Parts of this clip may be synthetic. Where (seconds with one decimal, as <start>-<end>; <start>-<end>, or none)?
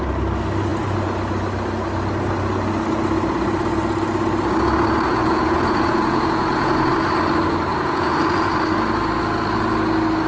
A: 5.1-6.9; 7.7-8.5